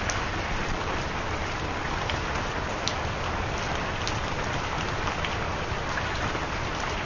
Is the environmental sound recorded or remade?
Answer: recorded